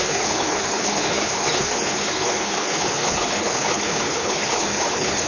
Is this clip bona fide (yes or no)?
no